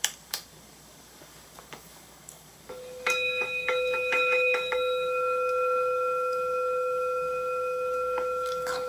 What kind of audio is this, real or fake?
fake